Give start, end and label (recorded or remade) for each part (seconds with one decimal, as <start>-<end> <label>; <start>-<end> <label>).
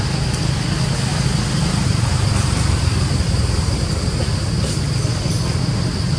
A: 0.0-1.1 recorded; 1.1-4.8 remade; 4.8-6.2 recorded